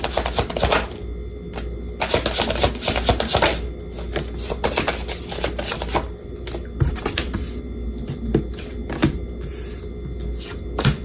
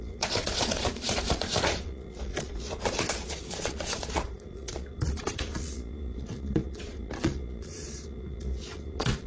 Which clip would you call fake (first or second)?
second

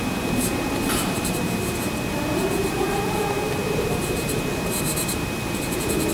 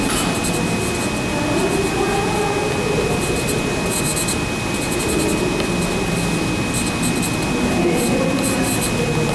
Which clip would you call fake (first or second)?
first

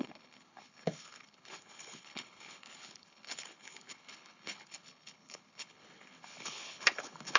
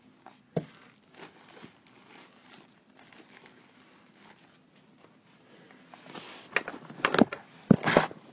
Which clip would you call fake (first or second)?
first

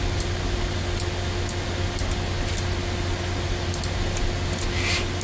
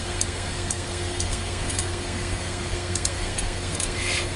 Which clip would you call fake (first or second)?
second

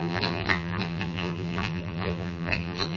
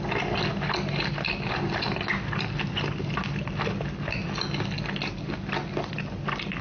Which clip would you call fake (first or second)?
first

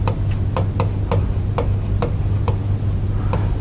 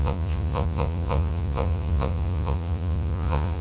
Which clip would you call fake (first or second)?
second